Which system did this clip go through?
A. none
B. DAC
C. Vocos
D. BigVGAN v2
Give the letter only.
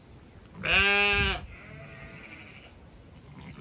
A